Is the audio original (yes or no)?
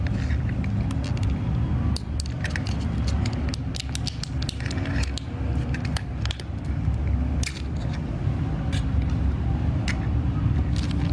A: yes